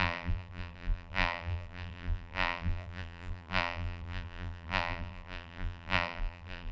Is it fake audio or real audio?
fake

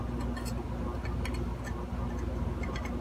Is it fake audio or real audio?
real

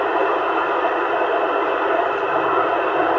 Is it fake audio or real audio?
real